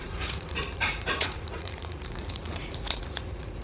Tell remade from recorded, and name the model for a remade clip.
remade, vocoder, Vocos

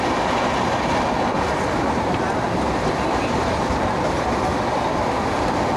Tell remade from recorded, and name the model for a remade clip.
recorded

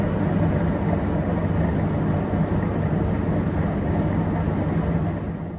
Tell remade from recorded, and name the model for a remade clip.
recorded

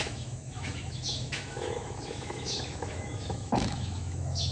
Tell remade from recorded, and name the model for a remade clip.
remade, autoencoder, DAC-VAE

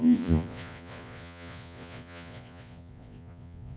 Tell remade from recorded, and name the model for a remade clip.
remade, vocoder, Vocos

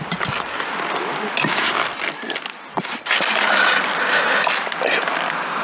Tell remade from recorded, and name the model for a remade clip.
recorded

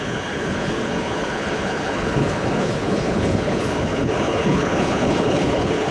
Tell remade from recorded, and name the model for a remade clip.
remade, codec, HILCodec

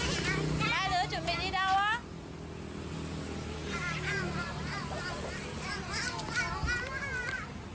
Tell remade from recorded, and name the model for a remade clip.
recorded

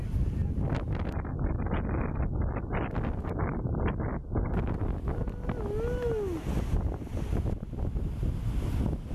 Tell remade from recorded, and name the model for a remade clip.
recorded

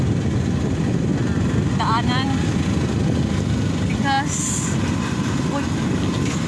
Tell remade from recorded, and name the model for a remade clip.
recorded